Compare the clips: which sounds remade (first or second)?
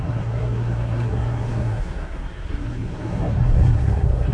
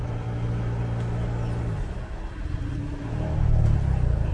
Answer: first